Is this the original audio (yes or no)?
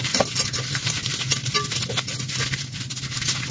yes